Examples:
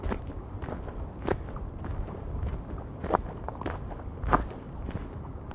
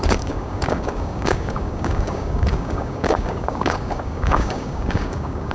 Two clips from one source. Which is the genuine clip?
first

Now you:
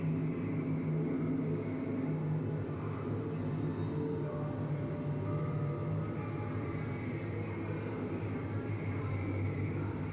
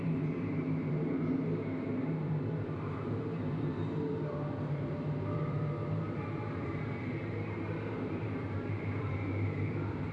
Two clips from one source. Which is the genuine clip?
first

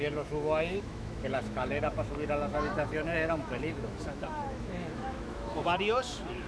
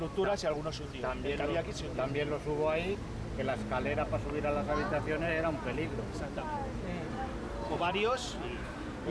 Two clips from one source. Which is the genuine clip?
second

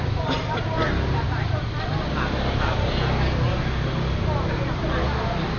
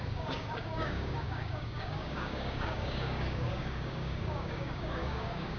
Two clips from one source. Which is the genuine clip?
first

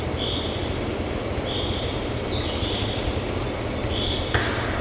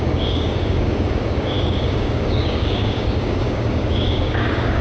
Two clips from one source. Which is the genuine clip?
first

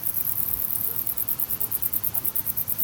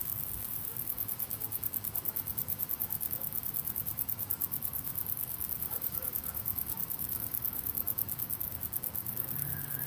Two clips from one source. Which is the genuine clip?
first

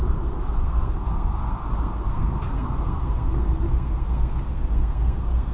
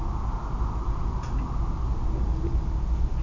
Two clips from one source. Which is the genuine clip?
second